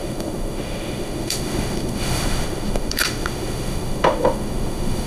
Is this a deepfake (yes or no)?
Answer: yes